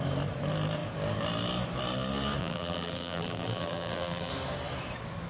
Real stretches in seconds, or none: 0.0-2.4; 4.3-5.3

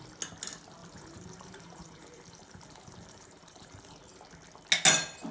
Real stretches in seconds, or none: 0.0-0.8; 3.9-5.3

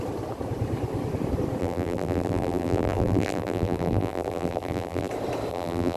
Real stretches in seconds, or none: 0.0-1.6; 5.1-5.5

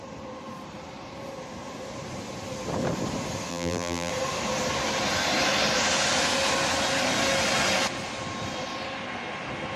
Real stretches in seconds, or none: 0.0-3.5; 4.1-9.8

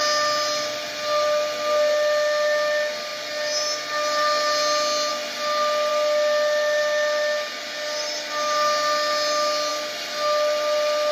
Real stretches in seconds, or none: 0.0-11.1